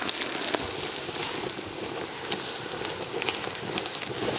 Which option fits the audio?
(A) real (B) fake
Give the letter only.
A